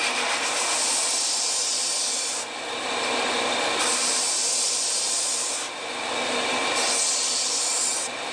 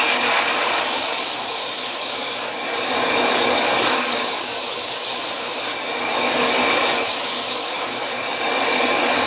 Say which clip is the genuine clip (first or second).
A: first